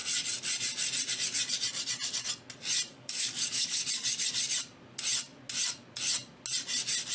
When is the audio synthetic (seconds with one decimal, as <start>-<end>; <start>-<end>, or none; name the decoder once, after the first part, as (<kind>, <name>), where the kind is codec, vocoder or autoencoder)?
2.9-3.9 (codec, DAC)